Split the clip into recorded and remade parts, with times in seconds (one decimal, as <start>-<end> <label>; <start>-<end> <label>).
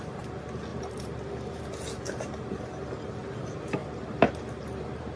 0.0-0.7 recorded; 0.7-1.6 remade; 1.6-3.8 recorded; 3.8-5.2 remade